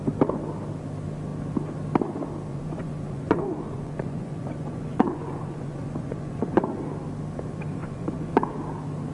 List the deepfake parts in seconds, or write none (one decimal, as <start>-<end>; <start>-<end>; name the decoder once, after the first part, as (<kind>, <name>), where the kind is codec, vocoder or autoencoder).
2.5-6.6 (vocoder, Vocos); 7.8-8.5